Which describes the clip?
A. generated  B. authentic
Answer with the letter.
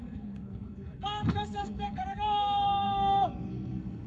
A